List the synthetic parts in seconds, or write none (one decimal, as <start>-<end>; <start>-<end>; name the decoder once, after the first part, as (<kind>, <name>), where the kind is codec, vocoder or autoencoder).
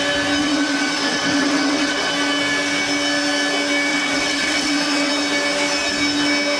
0.4-2.1 (vocoder, WaveNeXt); 3.9-5.1